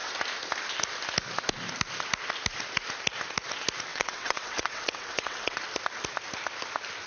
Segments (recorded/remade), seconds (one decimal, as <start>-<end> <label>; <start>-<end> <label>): 0.0-3.9 recorded; 3.9-5.6 remade; 5.6-7.1 recorded